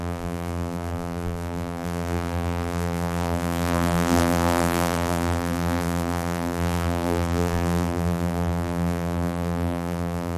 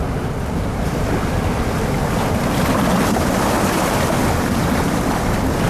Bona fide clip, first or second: second